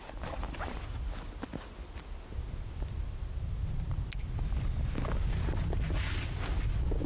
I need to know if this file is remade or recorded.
recorded